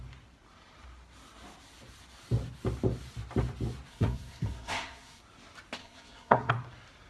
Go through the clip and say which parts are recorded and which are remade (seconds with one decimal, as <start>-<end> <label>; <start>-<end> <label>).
0.0-3.9 recorded; 3.9-5.2 remade; 5.2-5.8 recorded; 5.8-6.5 remade; 6.5-7.1 recorded